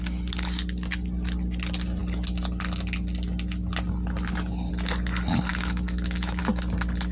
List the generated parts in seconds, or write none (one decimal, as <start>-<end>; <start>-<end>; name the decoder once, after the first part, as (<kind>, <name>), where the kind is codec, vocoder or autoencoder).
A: 5.5-6.4 (autoencoder, DAC-VAE)